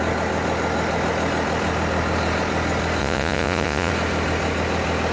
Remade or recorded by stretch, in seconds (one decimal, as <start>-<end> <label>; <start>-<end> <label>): 0.0-3.0 recorded; 3.0-3.9 remade; 3.9-5.1 recorded